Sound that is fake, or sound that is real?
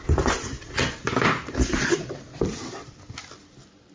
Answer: real